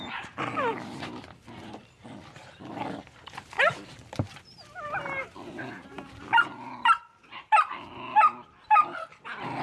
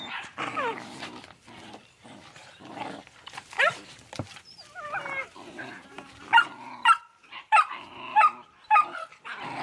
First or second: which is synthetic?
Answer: second